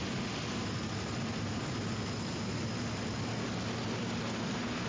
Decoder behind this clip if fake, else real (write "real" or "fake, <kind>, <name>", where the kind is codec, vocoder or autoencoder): real